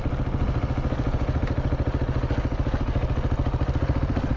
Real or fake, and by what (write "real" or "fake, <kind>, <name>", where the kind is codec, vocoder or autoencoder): real